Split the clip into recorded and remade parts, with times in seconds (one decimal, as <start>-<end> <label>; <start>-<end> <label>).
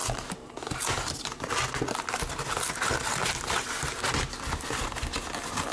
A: 0.0-5.7 recorded